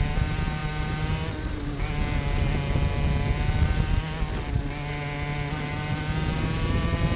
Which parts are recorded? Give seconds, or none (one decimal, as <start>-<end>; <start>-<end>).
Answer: 0.0-7.2